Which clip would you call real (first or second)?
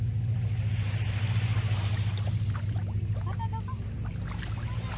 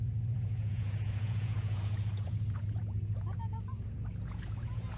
first